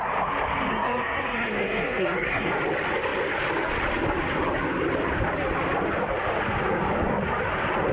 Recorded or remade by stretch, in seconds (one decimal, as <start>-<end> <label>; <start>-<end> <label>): 0.0-0.7 recorded; 0.7-2.5 remade; 2.5-7.9 recorded